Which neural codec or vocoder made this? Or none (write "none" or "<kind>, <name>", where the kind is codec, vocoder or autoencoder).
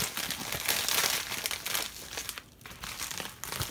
none